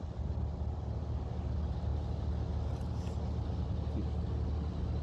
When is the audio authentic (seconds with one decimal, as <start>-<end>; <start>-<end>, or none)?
0.0-5.0